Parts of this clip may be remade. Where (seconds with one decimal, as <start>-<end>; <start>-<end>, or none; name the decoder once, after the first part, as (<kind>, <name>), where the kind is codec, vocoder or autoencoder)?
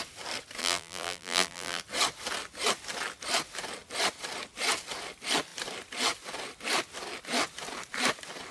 0.6-1.8 (vocoder, BigVGAN v2)